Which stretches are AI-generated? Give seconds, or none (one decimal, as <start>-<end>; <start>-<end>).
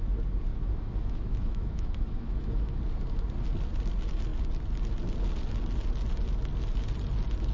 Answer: 0.5-2.8